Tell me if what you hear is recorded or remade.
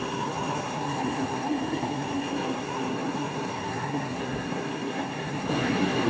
remade